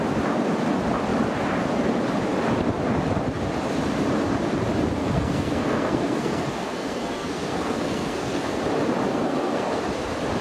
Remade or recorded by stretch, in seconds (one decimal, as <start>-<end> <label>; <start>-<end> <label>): 0.0-5.0 recorded; 5.0-8.6 remade; 8.6-9.1 recorded; 9.1-9.8 remade; 9.8-10.4 recorded